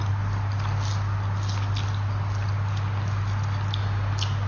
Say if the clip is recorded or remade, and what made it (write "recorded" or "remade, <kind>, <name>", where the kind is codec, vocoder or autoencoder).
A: recorded